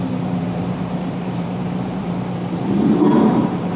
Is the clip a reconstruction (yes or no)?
yes